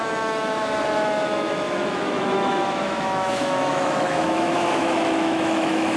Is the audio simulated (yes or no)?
yes